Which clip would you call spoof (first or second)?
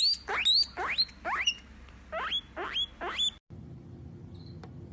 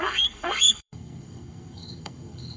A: second